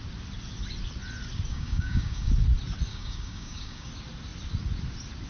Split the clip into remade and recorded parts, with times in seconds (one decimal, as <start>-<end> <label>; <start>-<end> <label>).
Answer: 0.0-1.5 recorded; 1.5-2.3 remade; 2.3-2.9 recorded; 2.9-3.9 remade; 3.9-5.3 recorded